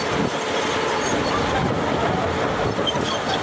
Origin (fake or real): real